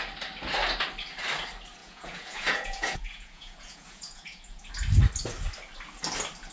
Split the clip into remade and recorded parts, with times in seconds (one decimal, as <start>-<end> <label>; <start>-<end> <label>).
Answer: 0.0-1.8 recorded; 1.8-4.7 remade; 4.7-6.5 recorded